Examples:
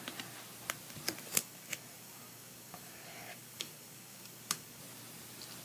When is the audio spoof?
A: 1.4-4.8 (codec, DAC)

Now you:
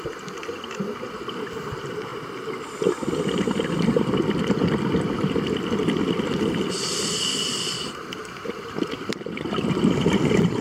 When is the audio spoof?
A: 0.0-2.1 (vocoder, BigVGAN v2); 6.3-10.6

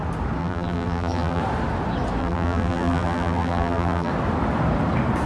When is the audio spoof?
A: 0.4-1.4 (vocoder, BigVGAN v2); 2.2-4.1